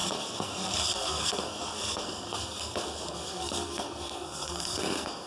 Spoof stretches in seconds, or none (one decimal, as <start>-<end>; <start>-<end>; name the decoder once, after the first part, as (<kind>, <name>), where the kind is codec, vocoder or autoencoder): 0.0-5.3 (codec, SNAC)